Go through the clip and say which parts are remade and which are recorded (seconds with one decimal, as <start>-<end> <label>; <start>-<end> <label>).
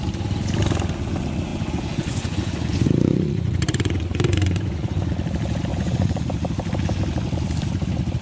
0.0-1.5 recorded; 1.5-5.1 remade; 5.1-5.7 recorded; 5.7-6.2 remade; 6.2-8.2 recorded